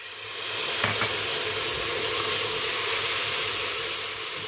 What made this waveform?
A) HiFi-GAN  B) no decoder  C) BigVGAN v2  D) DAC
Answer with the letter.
B